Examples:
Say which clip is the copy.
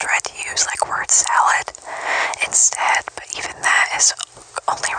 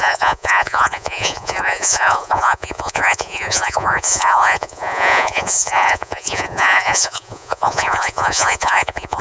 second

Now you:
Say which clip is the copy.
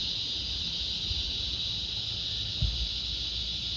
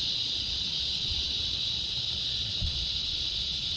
second